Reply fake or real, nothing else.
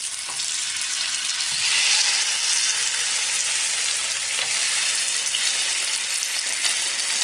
real